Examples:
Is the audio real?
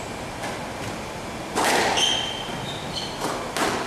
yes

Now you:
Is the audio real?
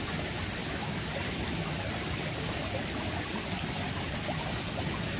yes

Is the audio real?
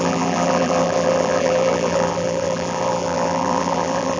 no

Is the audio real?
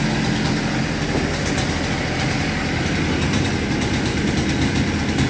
yes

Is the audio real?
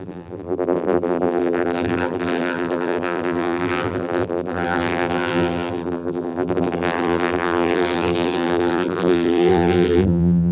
no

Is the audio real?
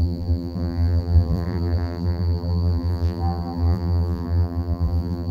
no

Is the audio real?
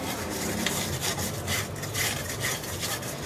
no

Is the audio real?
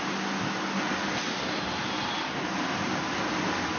yes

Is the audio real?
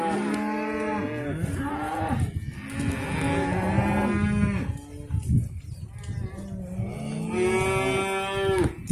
yes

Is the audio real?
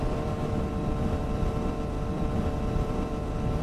no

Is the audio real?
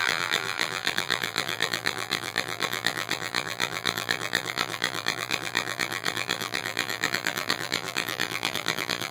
no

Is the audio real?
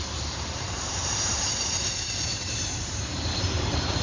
no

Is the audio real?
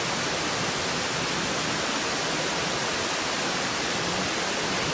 yes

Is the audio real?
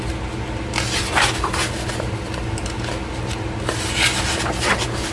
yes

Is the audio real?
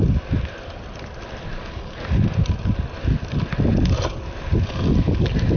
yes